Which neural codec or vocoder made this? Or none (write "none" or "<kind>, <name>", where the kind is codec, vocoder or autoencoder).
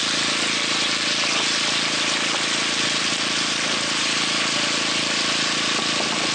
none